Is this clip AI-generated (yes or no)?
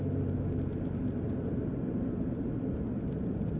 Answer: no